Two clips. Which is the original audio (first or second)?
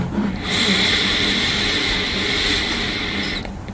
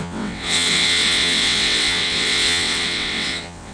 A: first